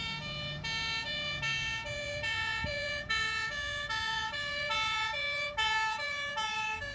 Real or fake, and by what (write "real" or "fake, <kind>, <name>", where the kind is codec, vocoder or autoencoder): fake, vocoder, Vocos